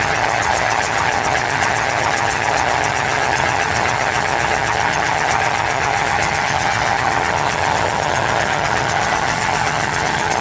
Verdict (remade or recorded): remade